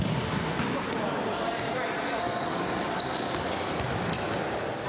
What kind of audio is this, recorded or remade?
recorded